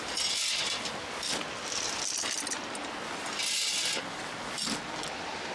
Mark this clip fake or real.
real